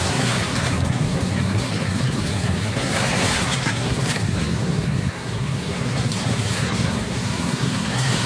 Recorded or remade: remade